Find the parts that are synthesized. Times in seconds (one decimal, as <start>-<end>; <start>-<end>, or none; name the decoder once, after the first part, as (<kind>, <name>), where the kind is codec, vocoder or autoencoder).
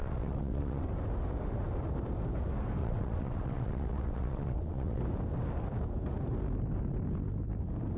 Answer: 0.0-0.9 (vocoder, WaveNeXt); 2.8-5.0